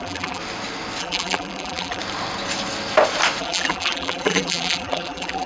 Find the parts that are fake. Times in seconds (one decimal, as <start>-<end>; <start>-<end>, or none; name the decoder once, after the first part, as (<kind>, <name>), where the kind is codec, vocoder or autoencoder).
0.0-0.4 (vocoder, BigVGAN v2); 1.0-2.0; 3.4-5.5